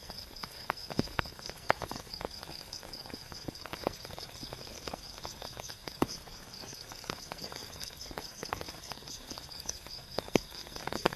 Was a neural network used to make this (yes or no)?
yes